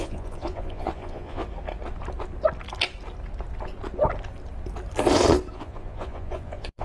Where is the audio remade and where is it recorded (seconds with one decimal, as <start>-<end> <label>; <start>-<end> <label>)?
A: 0.0-1.4 remade; 1.4-5.5 recorded; 5.5-6.8 remade